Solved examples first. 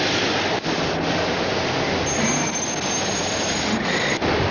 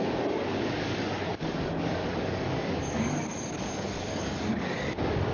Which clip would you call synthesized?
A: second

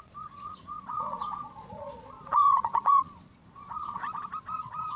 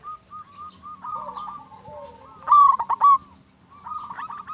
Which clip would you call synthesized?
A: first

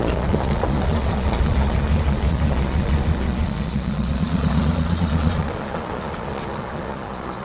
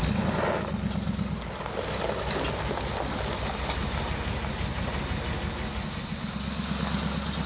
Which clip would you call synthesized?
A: first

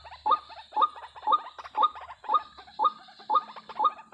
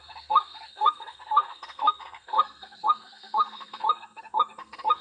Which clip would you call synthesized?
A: second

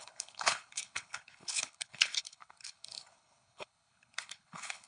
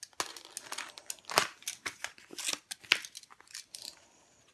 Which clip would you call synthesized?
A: first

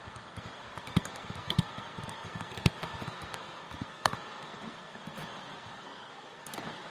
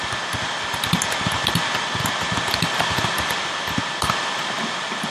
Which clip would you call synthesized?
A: first